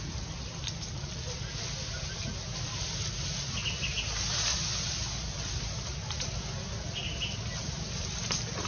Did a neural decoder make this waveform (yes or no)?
no